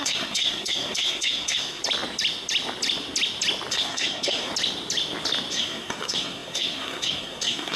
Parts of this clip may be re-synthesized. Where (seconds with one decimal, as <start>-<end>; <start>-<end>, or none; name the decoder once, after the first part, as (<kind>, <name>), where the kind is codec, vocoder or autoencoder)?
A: 0.0-1.8 (codec, SNAC); 3.7-4.5; 5.5-7.8